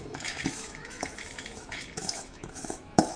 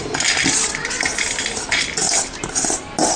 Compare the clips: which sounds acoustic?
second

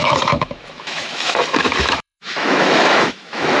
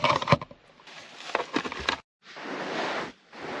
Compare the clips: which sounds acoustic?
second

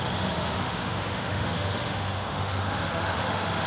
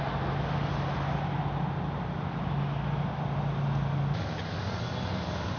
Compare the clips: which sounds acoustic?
second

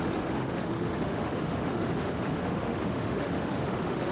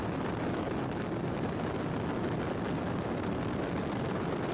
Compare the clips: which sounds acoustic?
second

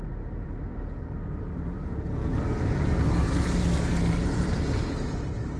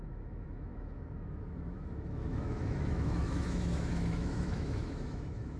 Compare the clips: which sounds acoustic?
first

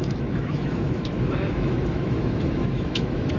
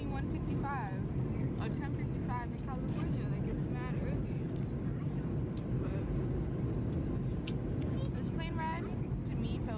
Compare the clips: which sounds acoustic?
second